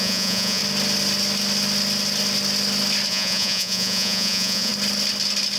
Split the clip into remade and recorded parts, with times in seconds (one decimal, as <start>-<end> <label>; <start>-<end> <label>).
0.0-0.6 remade; 0.6-3.1 recorded; 3.1-4.7 remade; 4.7-5.6 recorded